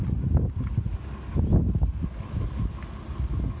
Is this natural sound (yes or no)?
yes